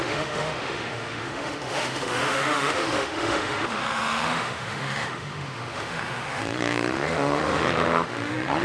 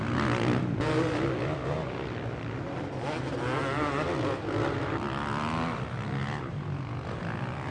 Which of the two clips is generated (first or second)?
first